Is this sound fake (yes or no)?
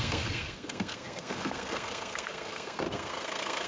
yes